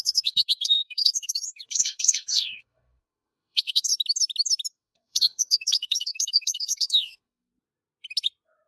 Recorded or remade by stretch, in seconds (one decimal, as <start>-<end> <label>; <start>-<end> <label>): 0.0-3.9 remade; 3.9-4.7 recorded; 4.7-7.5 remade; 7.5-8.7 recorded